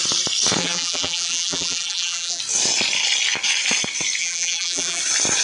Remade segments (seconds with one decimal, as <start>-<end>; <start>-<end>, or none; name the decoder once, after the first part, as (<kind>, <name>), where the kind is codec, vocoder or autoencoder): 0.6-2.4 (vocoder, BigVGAN v2); 4.2-5.0